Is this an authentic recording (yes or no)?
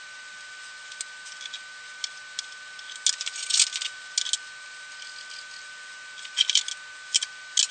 yes